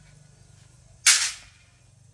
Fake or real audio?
real